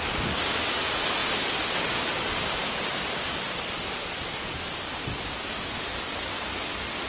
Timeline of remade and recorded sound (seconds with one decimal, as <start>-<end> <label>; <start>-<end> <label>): 0.0-7.1 recorded